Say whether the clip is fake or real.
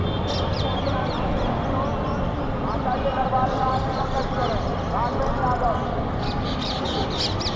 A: real